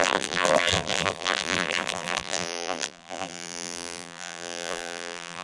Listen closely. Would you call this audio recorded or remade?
remade